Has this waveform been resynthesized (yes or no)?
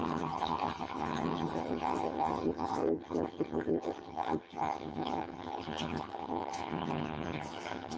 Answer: yes